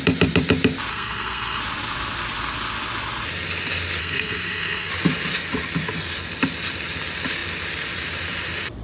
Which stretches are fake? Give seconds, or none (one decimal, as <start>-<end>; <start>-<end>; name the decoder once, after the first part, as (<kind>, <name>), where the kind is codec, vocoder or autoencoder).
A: 0.9-1.6 (codec, SNAC); 4.0-4.9